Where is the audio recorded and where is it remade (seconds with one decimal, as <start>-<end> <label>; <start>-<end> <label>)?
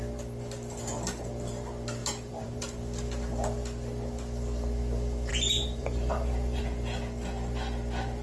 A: 0.0-2.0 recorded; 2.0-2.6 remade; 2.6-5.3 recorded; 5.3-6.6 remade; 6.6-8.2 recorded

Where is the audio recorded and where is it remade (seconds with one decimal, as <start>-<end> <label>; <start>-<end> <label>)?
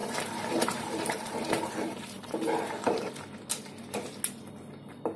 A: 0.0-3.1 remade; 3.1-5.2 recorded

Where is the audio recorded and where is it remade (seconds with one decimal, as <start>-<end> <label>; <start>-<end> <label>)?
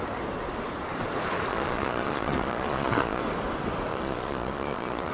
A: 0.0-1.5 recorded; 1.5-3.2 remade; 3.2-3.9 recorded; 3.9-5.1 remade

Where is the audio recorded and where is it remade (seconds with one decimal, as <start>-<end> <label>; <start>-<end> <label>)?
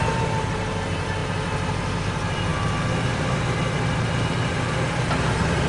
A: 0.0-5.7 recorded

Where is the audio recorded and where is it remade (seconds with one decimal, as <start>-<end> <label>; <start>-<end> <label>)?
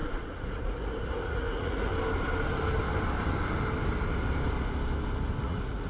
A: 0.0-1.9 remade; 1.9-5.4 recorded; 5.4-5.9 remade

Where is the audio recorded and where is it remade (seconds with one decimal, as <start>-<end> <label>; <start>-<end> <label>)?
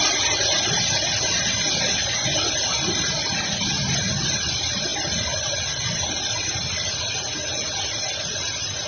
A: 0.0-8.9 recorded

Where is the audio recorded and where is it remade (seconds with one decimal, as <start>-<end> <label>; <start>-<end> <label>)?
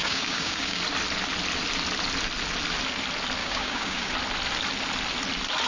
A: 0.0-0.8 remade; 0.8-3.4 recorded; 3.4-4.1 remade; 4.1-5.7 recorded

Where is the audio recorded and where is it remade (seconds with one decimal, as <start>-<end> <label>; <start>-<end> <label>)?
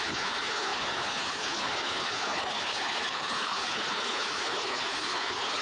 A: 0.0-5.6 remade